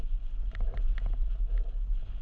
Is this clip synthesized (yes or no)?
no